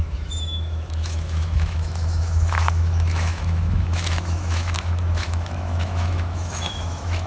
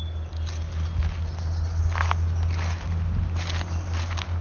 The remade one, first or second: first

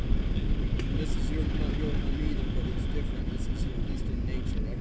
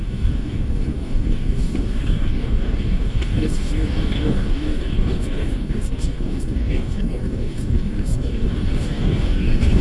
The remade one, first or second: second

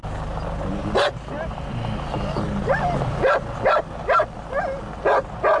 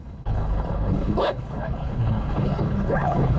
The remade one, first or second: second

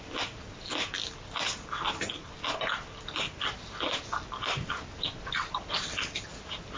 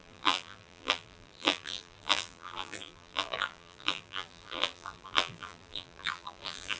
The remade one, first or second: second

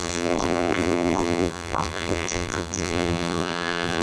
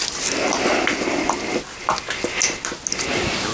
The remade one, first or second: first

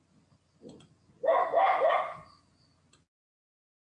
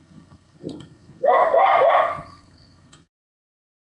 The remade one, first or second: second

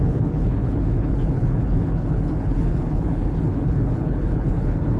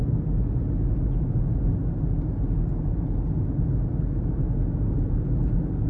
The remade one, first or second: first